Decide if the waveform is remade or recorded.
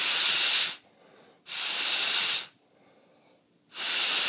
recorded